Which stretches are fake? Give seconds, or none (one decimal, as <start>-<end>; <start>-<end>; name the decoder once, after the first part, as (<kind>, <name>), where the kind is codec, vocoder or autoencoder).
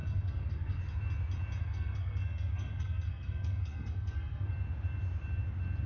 0.0-0.8 (codec, SNAC); 1.6-4.5